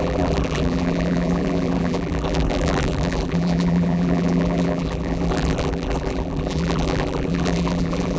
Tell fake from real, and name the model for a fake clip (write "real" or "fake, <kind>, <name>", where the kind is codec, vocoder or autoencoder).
fake, vocoder, BigVGAN v2